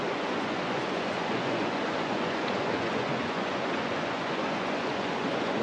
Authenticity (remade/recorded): remade